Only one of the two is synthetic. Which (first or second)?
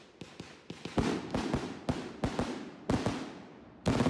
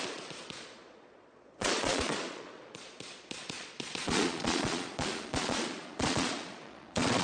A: second